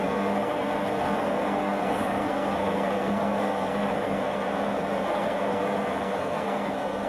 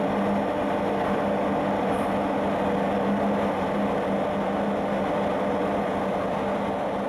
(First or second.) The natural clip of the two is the second